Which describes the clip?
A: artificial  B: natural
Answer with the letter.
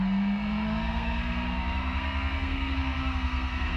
A